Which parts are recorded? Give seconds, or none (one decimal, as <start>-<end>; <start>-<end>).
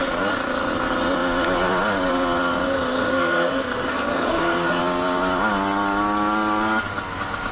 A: 0.0-2.7; 4.8-7.5